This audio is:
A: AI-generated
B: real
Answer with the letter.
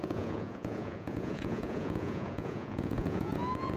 A